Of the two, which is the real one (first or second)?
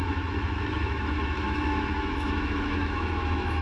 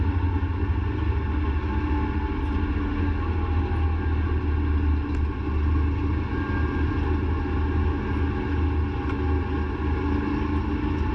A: second